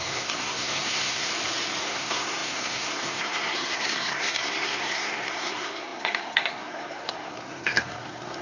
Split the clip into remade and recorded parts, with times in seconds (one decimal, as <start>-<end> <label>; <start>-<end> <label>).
0.0-1.3 remade; 1.3-1.8 recorded; 1.8-8.4 remade